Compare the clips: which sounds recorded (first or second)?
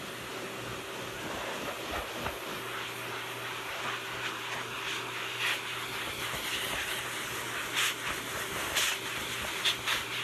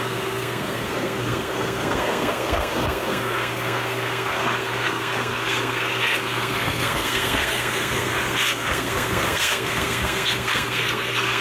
first